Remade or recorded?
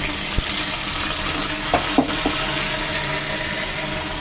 recorded